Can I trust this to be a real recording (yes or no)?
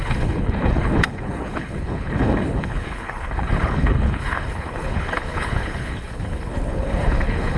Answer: no